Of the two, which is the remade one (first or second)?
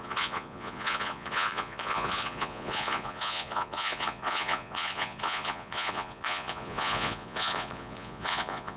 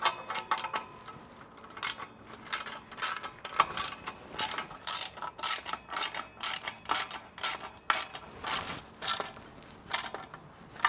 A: first